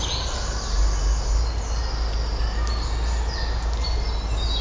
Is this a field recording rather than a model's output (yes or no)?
yes